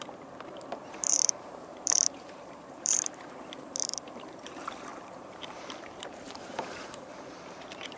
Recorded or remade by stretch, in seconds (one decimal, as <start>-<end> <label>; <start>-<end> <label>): 0.0-8.0 remade